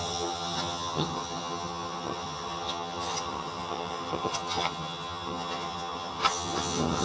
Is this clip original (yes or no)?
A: no